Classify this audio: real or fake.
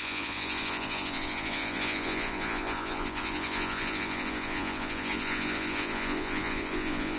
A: fake